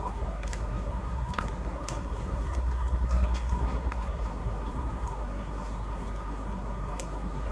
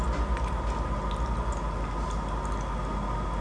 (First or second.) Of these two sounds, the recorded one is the second